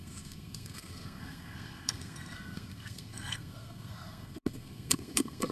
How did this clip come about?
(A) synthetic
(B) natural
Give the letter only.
A